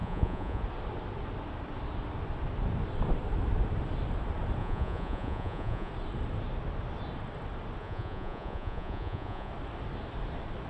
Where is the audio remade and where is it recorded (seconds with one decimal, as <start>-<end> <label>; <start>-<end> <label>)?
0.0-0.6 remade; 0.6-4.6 recorded; 4.6-5.9 remade; 5.9-7.8 recorded; 7.8-9.5 remade; 9.5-10.7 recorded